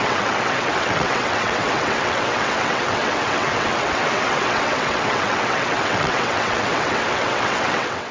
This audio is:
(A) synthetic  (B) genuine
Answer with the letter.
A